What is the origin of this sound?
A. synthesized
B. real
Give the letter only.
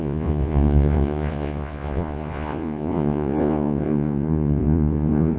A